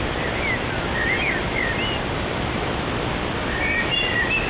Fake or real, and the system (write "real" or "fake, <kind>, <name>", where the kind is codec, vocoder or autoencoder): real